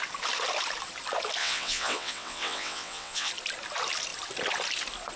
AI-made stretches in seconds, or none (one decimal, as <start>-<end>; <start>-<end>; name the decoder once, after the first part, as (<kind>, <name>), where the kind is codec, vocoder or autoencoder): 1.4-3.3 (vocoder, WaveNeXt)